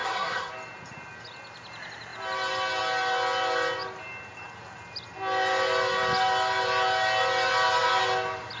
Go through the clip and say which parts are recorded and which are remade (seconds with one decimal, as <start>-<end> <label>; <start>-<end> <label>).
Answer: 0.0-0.5 remade; 0.5-8.6 recorded